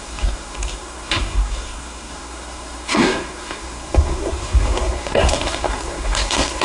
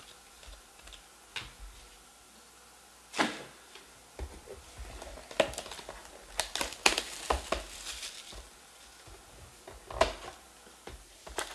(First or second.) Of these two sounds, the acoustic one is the second